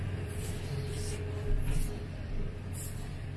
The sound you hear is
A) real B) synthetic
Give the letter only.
B